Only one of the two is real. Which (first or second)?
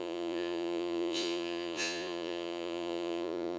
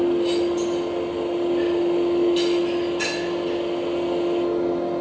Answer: second